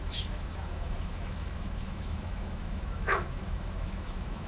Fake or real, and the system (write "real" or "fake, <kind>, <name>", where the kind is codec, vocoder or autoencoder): fake, autoencoder, DAC-VAE